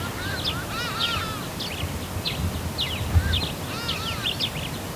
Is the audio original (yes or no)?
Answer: yes